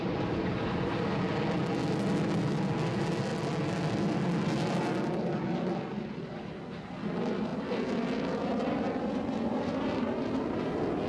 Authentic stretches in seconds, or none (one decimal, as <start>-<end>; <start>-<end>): 0.0-11.1